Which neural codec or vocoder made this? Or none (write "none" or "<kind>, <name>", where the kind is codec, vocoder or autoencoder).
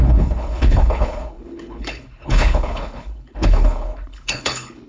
codec, HILCodec